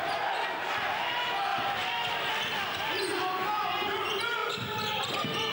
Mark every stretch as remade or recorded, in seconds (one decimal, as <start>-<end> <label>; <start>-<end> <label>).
0.0-5.5 recorded